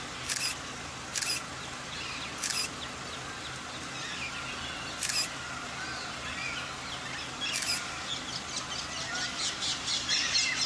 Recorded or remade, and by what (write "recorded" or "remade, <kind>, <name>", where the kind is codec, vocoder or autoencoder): recorded